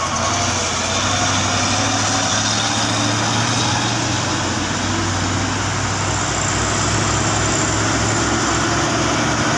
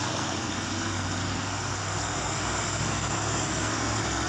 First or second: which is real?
first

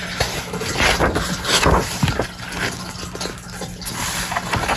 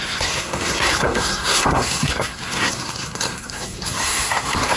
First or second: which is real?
first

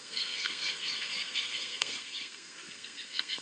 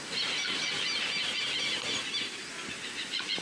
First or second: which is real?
second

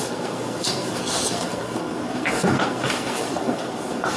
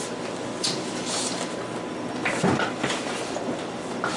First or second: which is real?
second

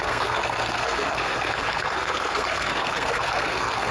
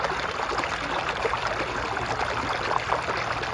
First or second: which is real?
second